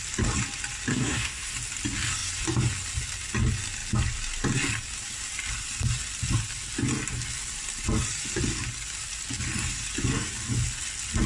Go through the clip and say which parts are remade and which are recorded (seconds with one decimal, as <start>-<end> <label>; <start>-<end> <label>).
0.0-0.9 recorded; 0.9-1.5 remade; 1.5-11.3 recorded